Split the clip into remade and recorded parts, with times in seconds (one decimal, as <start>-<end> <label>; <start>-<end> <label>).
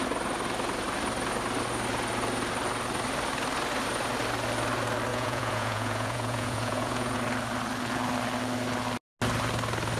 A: 0.0-5.1 recorded; 5.1-7.2 remade; 7.2-10.0 recorded